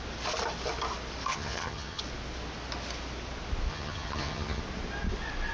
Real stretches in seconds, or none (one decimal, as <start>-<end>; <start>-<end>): 0.0-1.3; 2.0-3.7; 4.6-5.5